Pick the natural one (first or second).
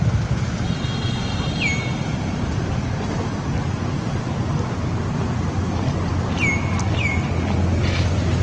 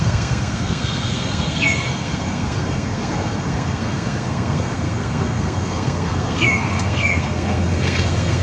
first